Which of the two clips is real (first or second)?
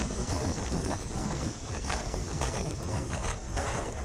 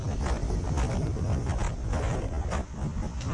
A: second